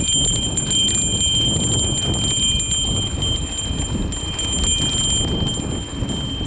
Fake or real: real